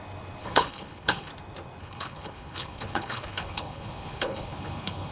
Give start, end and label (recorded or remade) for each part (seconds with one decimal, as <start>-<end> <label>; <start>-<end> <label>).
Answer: 0.0-0.4 recorded; 0.4-1.3 remade; 1.3-1.8 recorded; 1.8-5.1 remade